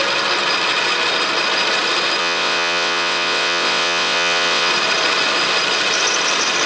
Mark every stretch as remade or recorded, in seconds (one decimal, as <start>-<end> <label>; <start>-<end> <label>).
0.0-2.2 recorded; 2.2-4.7 remade; 4.7-6.7 recorded